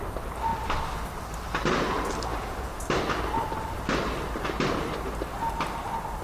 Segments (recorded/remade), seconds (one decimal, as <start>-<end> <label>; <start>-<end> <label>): 0.0-2.3 recorded; 2.3-2.8 remade; 2.8-6.2 recorded